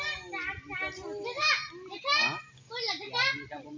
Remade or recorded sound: recorded